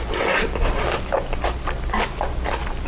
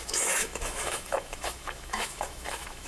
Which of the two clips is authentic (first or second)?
first